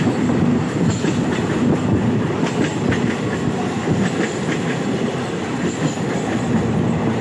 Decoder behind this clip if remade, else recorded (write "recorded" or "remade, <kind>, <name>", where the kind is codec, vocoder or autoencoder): remade, vocoder, BigVGAN v2